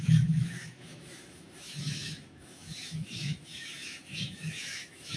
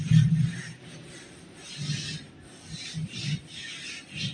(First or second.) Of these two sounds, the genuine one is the second